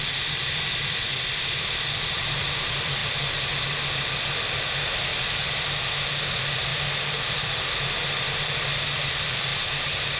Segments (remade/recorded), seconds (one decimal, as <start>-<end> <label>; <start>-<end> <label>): 0.0-3.0 remade; 3.0-4.3 recorded; 4.3-5.1 remade; 5.1-6.1 recorded; 6.1-6.7 remade; 6.7-7.3 recorded; 7.3-9.5 remade; 9.5-10.2 recorded